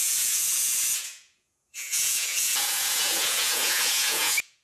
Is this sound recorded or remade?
remade